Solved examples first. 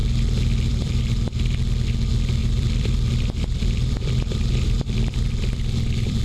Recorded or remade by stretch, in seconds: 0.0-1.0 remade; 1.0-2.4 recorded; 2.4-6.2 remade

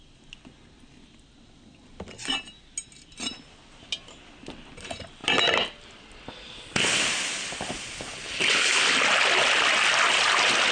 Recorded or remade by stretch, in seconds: 0.0-10.7 recorded

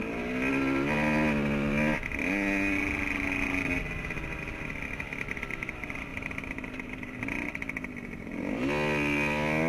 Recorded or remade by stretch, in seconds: 0.0-6.1 recorded; 6.1-7.5 remade; 7.5-9.7 recorded